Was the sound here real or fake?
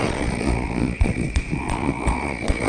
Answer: fake